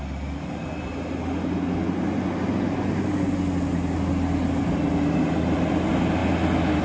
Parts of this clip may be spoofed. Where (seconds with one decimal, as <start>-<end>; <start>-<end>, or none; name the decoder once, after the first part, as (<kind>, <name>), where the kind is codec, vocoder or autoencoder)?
none